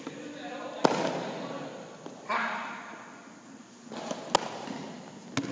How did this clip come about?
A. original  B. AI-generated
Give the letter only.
A